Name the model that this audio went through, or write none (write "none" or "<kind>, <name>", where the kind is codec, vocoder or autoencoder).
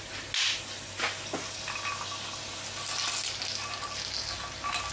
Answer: none